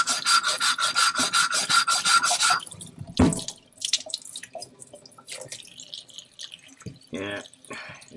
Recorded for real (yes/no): yes